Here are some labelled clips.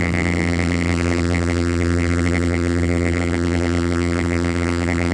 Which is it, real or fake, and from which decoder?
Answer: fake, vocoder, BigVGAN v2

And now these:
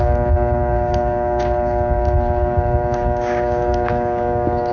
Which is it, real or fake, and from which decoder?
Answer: fake, codec, DAC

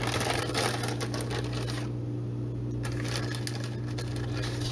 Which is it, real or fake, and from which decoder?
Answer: real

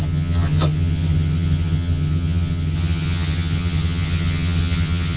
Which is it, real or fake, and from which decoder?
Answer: fake, vocoder, HiFi-GAN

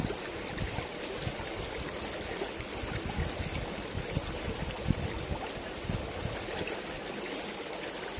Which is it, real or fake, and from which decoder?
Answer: real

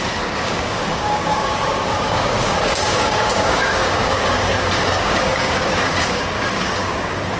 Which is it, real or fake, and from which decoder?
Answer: fake, codec, DAC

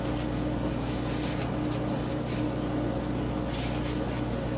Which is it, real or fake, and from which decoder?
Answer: real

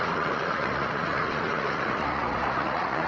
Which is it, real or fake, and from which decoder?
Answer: fake, vocoder, Vocos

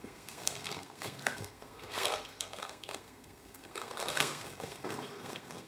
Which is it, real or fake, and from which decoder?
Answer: fake, codec, SNAC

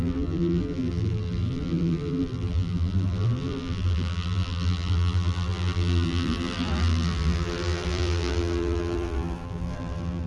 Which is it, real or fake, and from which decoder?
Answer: fake, vocoder, BigVGAN v2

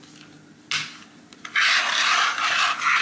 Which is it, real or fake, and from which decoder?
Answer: real